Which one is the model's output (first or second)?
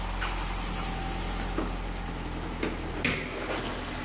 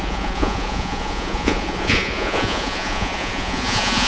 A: second